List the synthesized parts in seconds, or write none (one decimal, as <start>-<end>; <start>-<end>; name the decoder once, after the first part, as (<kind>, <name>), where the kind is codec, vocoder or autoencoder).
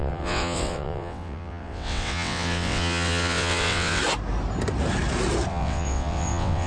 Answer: 0.0-4.0 (vocoder, WaveNeXt); 5.5-6.7